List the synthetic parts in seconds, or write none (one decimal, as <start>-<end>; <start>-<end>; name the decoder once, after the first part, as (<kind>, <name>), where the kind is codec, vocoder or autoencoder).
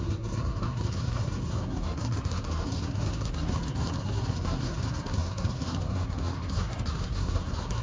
0.0-7.8 (codec, SNAC)